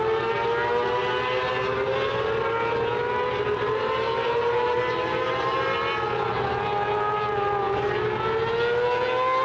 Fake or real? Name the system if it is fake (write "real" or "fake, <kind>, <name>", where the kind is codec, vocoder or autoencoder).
real